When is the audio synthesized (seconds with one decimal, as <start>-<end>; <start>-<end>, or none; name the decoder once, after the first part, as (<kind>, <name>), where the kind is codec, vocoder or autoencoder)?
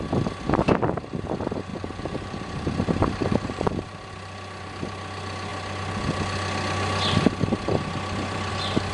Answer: 1.7-4.1 (vocoder, BigVGAN v2)